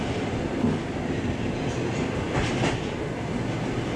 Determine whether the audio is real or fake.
real